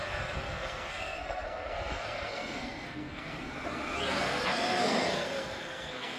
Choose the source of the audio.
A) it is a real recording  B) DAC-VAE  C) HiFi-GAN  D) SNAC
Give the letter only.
D